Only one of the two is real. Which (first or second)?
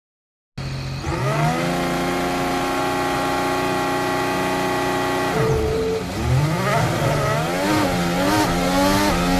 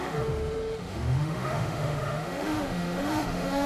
first